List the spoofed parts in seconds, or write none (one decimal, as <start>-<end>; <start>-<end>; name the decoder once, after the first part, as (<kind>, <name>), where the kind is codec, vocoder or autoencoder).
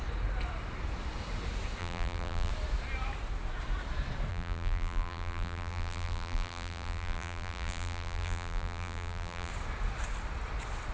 1.8-2.5 (vocoder, BigVGAN v2); 4.3-9.5